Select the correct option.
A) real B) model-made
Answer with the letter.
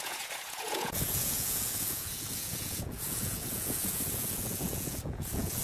B